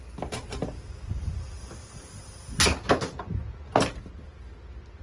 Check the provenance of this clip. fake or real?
real